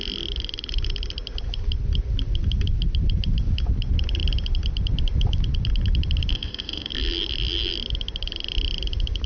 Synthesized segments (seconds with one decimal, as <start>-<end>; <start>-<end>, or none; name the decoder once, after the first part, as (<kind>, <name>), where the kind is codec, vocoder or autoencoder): 6.3-6.9 (codec, ZipCodec)